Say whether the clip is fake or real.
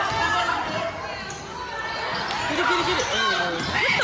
real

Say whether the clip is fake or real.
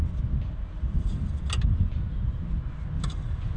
real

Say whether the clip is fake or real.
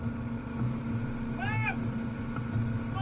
real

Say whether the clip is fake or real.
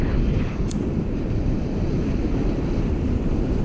fake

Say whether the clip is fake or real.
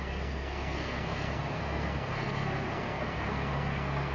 fake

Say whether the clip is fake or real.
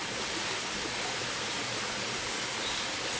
real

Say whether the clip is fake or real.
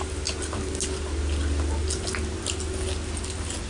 real